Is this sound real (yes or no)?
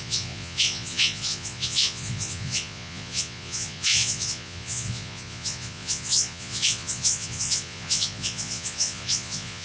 no